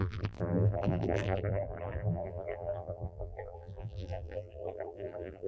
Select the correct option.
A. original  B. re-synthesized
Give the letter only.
B